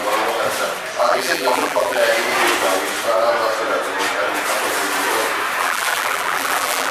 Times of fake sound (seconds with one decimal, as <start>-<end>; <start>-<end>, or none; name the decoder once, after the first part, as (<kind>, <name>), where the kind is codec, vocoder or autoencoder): 1.0-2.0 (vocoder, BigVGAN v2); 5.6-6.9

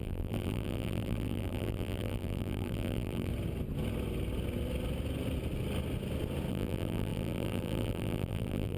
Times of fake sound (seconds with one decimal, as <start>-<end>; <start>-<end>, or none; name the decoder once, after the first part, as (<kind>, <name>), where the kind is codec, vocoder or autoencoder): 0.0-3.3 (vocoder, BigVGAN v2); 6.5-8.8

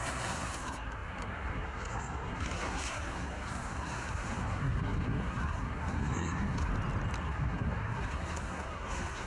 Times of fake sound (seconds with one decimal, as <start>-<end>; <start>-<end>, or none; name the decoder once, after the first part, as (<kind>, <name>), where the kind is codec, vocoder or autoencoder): 0.0-6.7 (codec, SNAC); 7.2-9.3

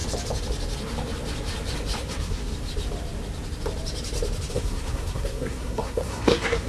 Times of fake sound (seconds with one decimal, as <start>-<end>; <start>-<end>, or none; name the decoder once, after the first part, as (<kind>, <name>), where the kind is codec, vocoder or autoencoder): 2.1-2.5 (codec, SNAC); 4.5-6.7

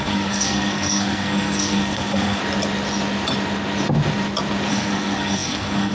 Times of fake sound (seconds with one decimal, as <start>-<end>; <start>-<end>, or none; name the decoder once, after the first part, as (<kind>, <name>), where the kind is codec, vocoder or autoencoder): 0.0-2.4 (codec, SNAC); 4.7-5.9

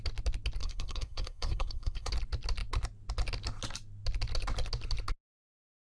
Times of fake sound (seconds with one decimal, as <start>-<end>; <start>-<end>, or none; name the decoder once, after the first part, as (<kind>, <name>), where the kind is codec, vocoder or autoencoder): 0.6-2.1 (codec, SNAC)